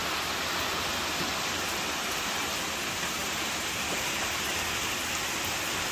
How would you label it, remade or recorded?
recorded